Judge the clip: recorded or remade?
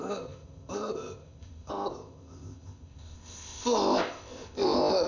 remade